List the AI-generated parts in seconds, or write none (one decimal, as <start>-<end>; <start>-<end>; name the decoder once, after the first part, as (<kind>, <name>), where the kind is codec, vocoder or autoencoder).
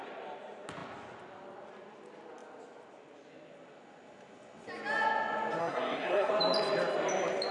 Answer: 5.6-6.3 (codec, SNAC)